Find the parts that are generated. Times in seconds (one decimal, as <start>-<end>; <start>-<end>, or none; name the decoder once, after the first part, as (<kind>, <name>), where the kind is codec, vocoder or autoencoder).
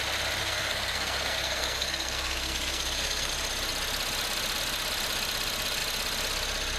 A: 0.4-3.3 (codec, SNAC)